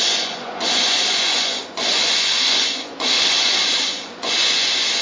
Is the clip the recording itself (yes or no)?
no